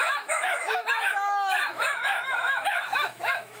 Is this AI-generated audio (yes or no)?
yes